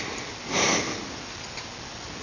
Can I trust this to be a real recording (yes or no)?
yes